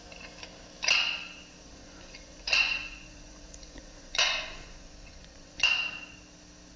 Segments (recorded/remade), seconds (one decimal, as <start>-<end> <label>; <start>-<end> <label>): 0.0-1.7 recorded; 1.7-5.8 remade; 5.8-6.8 recorded